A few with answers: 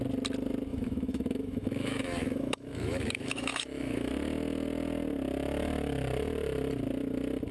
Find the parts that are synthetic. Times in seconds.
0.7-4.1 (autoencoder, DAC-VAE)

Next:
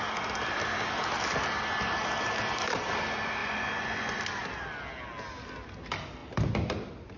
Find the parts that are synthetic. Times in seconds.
3.4-4.2 (vocoder, Vocos)

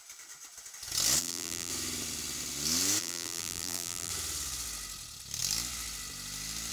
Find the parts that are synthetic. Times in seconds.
1.2-1.7 (vocoder, BigVGAN v2); 3.0-4.1

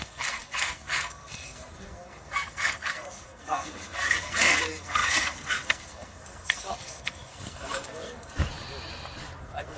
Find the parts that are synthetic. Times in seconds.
0.0-8.4 (codec, SNAC); 9.4-9.8

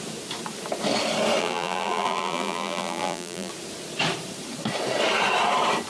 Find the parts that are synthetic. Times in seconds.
1.4-3.5 (vocoder, BigVGAN v2)

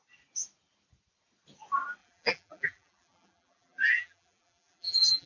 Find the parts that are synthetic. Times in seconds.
2.0-5.3 (vocoder, BigVGAN v2)

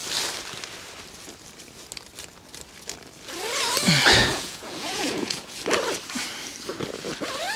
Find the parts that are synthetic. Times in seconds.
4.2-5.6 (vocoder, Vocos)

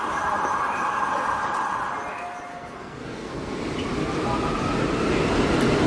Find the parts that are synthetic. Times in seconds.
2.5-3.6 (codec, SNAC)